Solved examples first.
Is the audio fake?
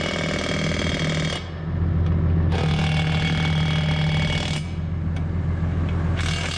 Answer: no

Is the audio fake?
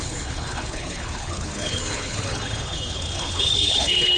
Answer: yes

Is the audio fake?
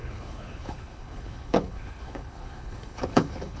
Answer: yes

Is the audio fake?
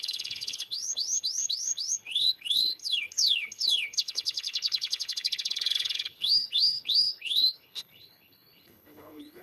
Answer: yes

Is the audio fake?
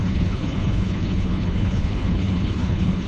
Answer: yes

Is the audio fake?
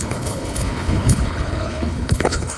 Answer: yes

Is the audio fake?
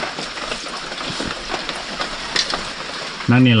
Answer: no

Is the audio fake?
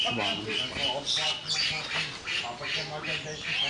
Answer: no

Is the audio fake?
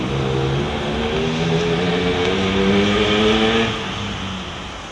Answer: no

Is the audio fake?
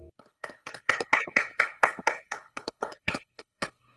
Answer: yes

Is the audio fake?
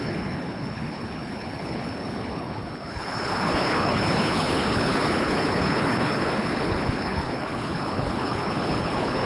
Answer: yes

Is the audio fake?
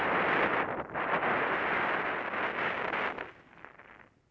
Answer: no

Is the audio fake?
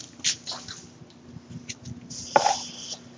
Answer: no